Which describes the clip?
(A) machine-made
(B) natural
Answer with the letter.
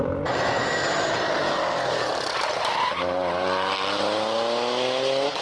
B